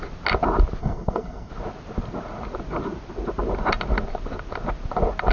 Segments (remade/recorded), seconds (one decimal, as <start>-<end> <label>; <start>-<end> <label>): 0.0-0.8 recorded; 0.8-1.5 remade; 1.5-5.3 recorded